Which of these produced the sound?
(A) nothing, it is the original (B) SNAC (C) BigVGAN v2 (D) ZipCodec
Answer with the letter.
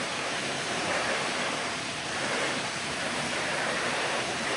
C